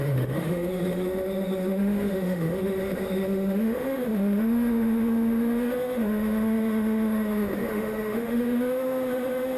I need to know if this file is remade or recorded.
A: remade